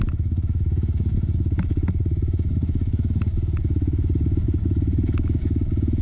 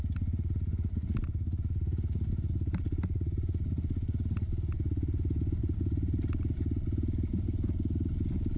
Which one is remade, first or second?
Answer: first